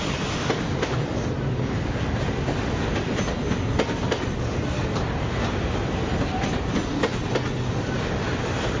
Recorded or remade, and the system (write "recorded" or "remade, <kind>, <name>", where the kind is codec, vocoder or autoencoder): recorded